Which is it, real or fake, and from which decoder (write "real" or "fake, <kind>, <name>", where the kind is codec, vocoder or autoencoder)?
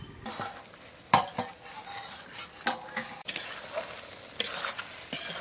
real